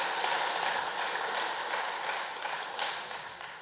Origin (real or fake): real